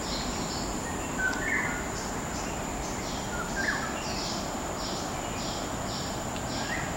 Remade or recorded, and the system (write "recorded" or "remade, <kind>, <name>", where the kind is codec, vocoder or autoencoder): recorded